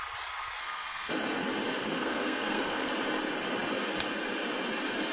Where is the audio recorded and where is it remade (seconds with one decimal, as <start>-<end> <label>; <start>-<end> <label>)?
0.0-0.6 recorded; 0.6-1.1 remade; 1.1-1.8 recorded; 1.8-2.9 remade; 2.9-5.1 recorded